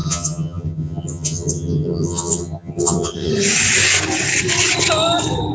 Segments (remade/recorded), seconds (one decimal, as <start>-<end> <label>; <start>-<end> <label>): 0.0-3.3 remade; 3.3-5.5 recorded